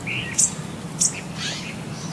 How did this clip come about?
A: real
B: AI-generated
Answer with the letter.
A